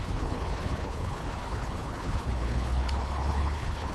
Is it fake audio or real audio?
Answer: fake